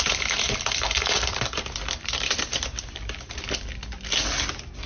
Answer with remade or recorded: remade